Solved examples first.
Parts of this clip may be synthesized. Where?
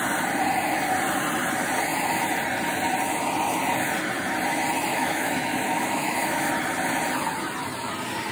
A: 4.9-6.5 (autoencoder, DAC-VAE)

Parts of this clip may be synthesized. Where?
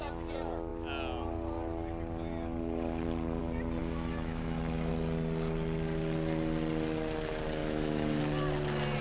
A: 3.8-4.9 (autoencoder, DAC-VAE); 7.6-8.2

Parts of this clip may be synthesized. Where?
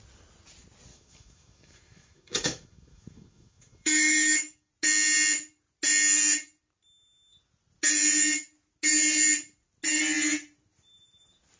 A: 0.9-4.7 (autoencoder, DAC-VAE)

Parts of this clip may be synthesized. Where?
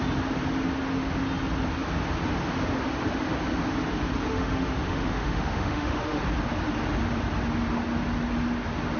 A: 4.3-6.2 (autoencoder, DAC-VAE)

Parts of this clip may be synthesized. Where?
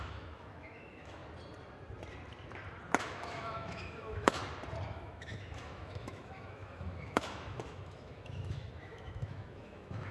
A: 0.0-1.2 (autoencoder, DAC-VAE); 3.0-4.4; 4.9-10.1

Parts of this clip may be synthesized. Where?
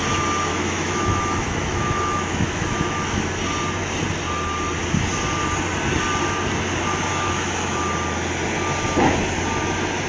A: 0.5-3.2 (autoencoder, DAC-VAE); 7.1-7.8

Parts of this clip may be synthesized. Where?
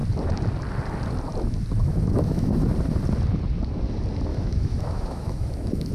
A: 1.8-2.7 (autoencoder, DAC-VAE); 4.3-5.9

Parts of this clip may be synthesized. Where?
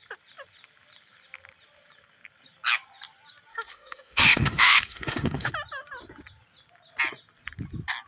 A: 3.5-5.5 (autoencoder, DAC-VAE)